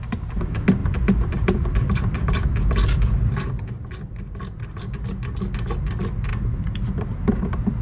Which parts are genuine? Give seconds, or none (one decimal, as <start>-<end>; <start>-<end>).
0.0-0.8; 4.8-6.3; 7.0-7.8